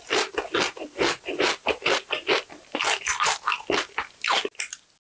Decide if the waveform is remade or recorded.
recorded